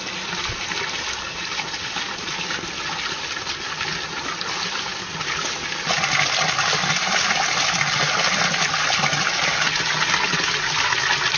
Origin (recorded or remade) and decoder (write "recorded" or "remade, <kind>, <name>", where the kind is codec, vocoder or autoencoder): recorded